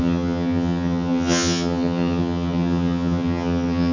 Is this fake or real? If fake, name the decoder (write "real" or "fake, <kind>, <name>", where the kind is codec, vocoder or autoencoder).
fake, vocoder, HiFi-GAN